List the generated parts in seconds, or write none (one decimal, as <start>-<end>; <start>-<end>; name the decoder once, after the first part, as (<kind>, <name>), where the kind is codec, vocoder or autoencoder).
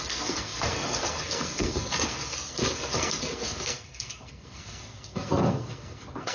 0.0-6.3 (codec, SNAC)